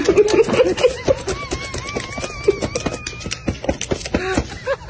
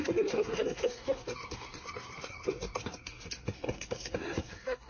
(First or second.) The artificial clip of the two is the second